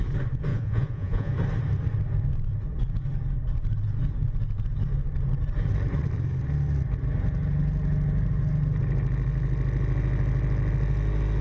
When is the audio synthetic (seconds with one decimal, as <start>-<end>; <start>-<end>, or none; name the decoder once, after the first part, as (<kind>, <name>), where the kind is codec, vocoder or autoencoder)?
0.5-1.3 (vocoder, Vocos)

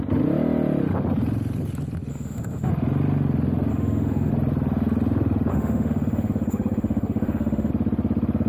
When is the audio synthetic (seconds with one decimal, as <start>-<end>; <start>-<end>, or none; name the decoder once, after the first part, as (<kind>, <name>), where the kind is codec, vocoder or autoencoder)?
2.1-2.7 (autoencoder, DAC-VAE); 3.7-4.3; 5.5-7.7

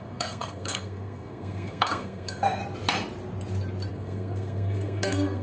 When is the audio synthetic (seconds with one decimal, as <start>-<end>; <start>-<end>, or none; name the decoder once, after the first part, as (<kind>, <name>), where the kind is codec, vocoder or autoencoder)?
0.0-2.6 (codec, SNAC); 3.9-5.4

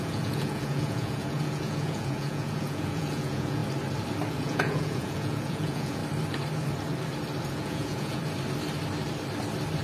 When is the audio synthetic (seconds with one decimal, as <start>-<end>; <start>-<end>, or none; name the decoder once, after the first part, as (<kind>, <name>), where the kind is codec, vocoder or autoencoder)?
0.0-3.6 (vocoder, Vocos); 4.3-6.0; 7.4-8.2

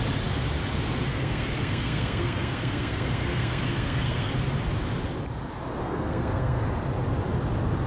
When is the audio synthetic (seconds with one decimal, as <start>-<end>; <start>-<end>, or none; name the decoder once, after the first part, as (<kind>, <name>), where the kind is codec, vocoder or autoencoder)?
1.1-4.3 (codec, SNAC); 5.8-6.6

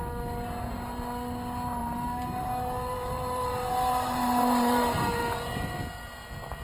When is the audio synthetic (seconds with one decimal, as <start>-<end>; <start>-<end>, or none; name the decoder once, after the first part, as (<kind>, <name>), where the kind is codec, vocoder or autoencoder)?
1.8-5.8 (vocoder, BigVGAN v2)